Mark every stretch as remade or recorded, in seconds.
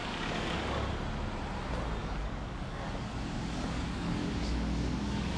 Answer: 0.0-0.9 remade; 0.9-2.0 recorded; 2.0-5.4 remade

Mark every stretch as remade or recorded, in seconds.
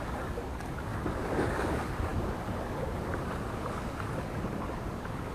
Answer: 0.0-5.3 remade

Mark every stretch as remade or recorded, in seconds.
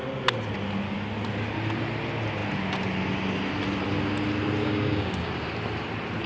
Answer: 0.0-4.6 recorded; 4.6-5.3 remade; 5.3-6.3 recorded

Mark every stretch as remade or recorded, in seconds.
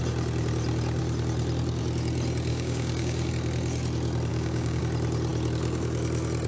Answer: 0.0-2.5 recorded; 2.5-3.3 remade; 3.3-4.3 recorded; 4.3-4.8 remade; 4.8-6.5 recorded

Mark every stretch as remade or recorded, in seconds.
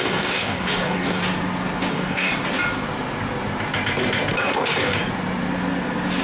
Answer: 0.0-1.2 remade; 1.2-1.9 recorded; 1.9-2.3 remade; 2.3-4.4 recorded; 4.4-5.0 remade; 5.0-6.2 recorded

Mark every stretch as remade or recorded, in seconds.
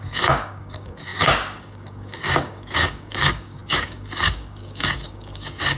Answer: 0.0-5.8 remade